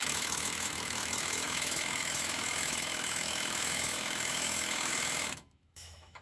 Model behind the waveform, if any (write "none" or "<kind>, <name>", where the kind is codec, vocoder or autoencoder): autoencoder, DAC-VAE